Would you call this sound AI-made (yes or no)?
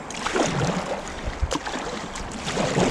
no